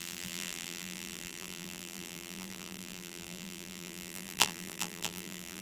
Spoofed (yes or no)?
yes